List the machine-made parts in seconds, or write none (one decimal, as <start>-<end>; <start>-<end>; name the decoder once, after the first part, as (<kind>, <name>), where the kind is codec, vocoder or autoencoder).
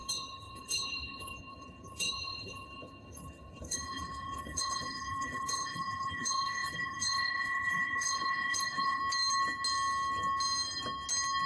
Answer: 0.0-9.0 (codec, HILCodec)